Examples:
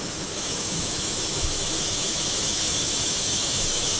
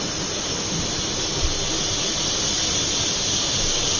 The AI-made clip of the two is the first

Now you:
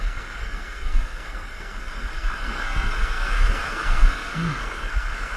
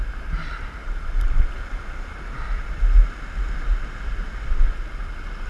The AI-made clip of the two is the first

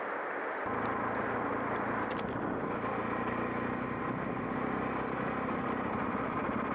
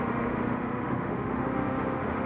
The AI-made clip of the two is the second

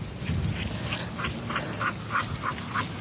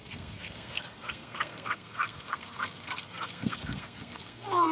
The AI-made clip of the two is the second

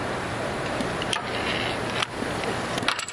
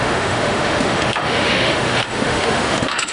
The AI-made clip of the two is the second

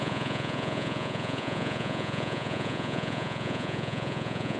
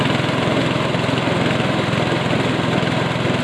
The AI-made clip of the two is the first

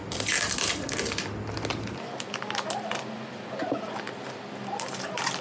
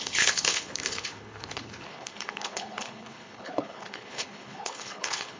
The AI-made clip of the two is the second